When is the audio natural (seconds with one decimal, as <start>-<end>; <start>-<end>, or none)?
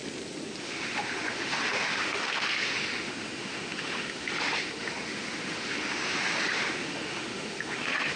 0.0-0.6